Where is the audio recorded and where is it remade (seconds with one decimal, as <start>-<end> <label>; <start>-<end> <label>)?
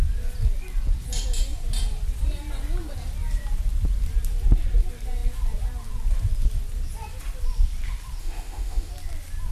0.0-8.2 recorded; 8.2-8.9 remade; 8.9-9.5 recorded